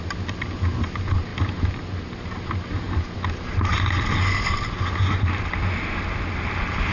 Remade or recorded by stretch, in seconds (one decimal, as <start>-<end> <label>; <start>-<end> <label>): 0.0-6.9 recorded